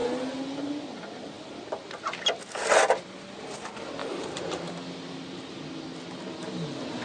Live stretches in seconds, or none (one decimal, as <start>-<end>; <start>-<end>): 0.0-4.0; 4.7-7.0